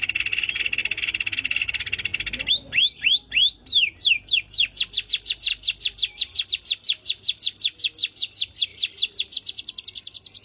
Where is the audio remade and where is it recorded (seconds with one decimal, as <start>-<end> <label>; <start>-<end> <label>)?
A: 0.0-10.4 recorded